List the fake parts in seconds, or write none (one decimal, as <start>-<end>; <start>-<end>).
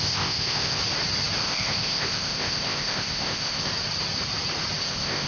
0.0-0.8; 1.4-3.7; 4.8-5.3